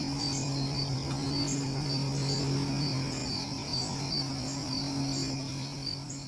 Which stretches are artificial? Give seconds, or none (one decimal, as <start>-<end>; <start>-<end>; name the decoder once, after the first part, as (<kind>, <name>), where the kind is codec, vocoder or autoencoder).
none